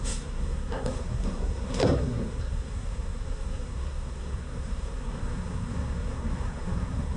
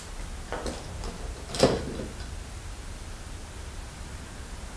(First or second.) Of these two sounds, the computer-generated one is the first